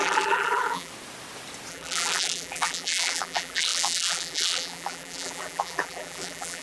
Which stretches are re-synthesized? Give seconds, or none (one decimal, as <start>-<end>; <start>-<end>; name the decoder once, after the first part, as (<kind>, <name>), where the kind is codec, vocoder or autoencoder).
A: 0.0-0.9 (vocoder, BigVGAN v2); 1.7-6.6